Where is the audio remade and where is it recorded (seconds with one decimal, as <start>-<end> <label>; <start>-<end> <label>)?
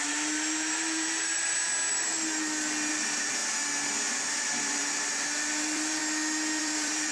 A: 0.0-1.7 remade; 1.7-2.9 recorded; 2.9-3.4 remade; 3.4-4.4 recorded; 4.4-6.0 remade; 6.0-6.6 recorded; 6.6-7.1 remade